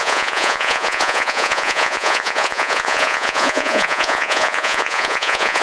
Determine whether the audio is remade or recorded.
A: remade